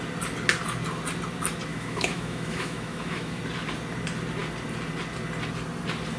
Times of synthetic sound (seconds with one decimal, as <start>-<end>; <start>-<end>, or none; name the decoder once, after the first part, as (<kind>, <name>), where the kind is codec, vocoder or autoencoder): 1.7-3.4 (autoencoder, DAC-VAE)